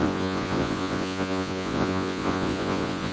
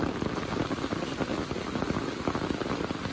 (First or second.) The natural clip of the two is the second